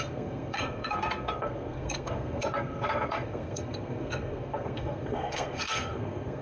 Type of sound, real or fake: fake